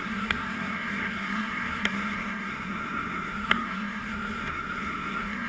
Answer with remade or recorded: remade